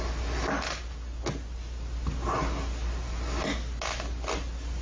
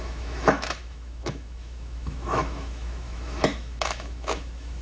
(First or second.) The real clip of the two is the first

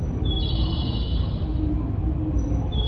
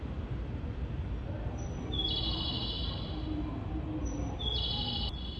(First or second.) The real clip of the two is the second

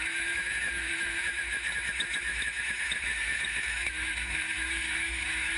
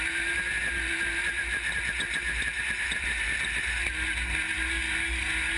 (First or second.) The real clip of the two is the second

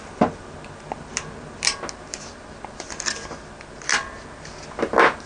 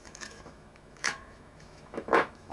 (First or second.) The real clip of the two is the first